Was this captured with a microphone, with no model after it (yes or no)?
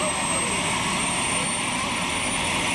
yes